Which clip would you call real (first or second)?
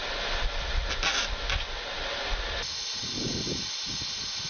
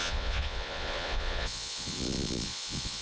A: first